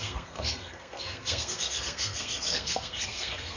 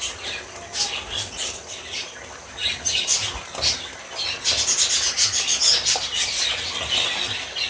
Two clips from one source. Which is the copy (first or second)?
first